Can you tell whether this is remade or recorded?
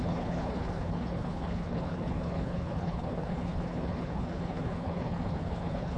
remade